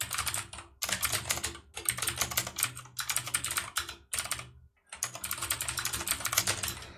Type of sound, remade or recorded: recorded